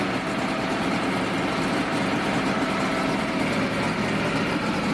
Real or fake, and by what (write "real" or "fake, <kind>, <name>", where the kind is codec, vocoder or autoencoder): real